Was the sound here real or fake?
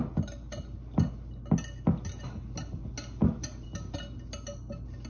real